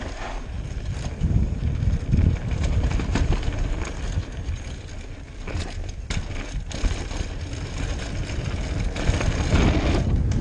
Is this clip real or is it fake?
real